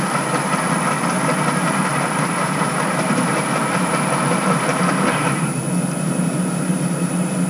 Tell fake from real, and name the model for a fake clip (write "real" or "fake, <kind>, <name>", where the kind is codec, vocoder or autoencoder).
fake, vocoder, BigVGAN v2